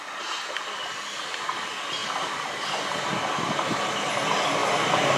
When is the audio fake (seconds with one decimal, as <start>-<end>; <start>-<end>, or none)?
none